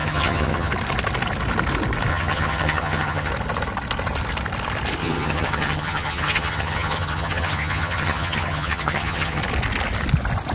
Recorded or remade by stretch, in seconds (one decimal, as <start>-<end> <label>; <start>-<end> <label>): 0.0-0.7 remade; 0.7-2.1 recorded; 2.1-3.3 remade; 3.3-5.0 recorded; 5.0-9.4 remade; 9.4-10.5 recorded